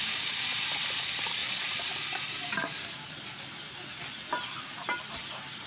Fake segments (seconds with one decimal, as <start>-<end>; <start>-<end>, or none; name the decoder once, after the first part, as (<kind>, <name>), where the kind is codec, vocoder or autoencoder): none